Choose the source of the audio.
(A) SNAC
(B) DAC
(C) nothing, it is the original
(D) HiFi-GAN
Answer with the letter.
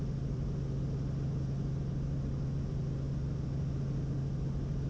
C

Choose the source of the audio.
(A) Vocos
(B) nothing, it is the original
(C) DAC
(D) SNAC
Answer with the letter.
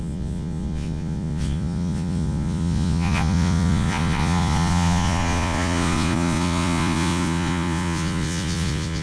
A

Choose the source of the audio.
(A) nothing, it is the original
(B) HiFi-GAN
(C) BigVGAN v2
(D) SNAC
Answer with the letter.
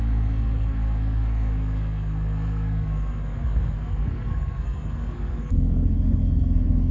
D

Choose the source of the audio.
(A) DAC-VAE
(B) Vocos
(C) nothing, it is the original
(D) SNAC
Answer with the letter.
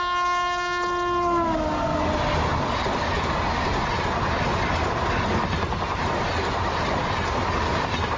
C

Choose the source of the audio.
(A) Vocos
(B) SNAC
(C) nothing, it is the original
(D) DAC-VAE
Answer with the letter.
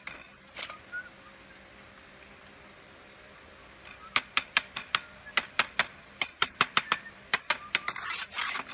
C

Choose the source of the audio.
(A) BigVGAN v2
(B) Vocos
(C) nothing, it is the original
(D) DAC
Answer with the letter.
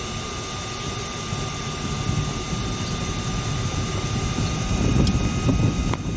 C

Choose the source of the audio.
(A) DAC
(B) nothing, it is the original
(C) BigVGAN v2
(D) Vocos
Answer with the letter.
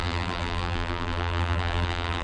C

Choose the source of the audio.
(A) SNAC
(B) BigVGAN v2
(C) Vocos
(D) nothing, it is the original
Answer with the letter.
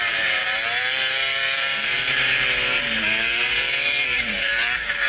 B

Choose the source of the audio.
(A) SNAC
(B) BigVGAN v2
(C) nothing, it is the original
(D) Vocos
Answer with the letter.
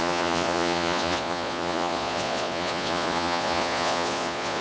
D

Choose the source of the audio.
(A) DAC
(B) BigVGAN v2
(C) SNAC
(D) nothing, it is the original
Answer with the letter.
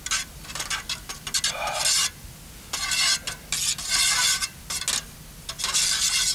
D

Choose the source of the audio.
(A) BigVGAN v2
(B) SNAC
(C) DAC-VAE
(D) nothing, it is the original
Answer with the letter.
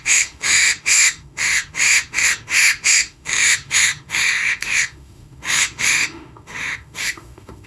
C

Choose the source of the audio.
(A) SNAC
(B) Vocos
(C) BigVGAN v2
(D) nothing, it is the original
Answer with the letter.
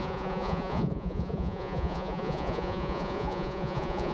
B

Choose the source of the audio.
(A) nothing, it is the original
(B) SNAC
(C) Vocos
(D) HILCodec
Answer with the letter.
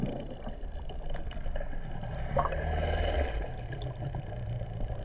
A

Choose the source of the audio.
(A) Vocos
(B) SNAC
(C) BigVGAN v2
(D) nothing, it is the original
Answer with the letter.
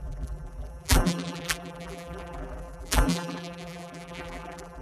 C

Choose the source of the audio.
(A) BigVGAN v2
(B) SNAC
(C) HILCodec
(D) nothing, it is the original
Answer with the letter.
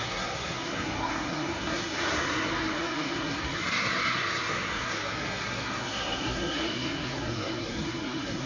B